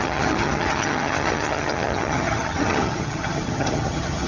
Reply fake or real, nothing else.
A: fake